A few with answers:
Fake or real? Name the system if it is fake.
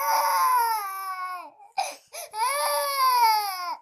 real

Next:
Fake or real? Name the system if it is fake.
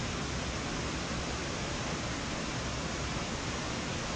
real